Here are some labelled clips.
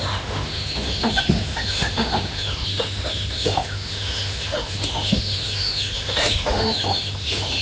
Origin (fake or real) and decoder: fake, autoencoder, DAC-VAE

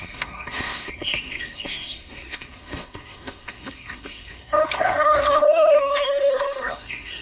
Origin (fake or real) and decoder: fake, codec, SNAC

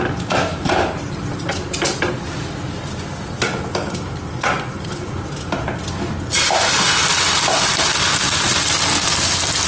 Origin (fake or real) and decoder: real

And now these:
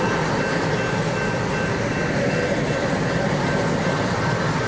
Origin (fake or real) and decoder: real